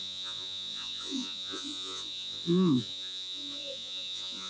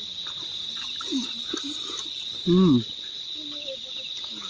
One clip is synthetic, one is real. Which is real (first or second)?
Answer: second